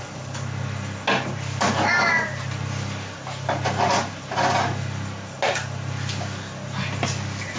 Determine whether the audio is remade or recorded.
recorded